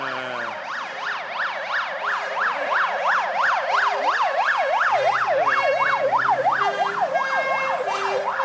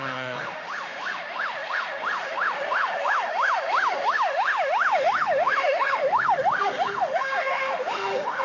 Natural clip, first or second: first